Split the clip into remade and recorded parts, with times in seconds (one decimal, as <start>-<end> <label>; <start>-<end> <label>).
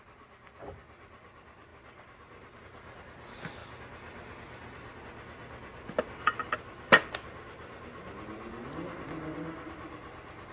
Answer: 0.0-10.5 recorded